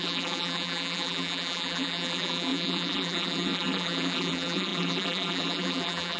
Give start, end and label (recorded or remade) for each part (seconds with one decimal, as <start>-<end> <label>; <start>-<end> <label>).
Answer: 0.0-6.2 remade